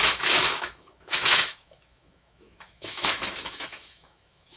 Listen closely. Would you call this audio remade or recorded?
remade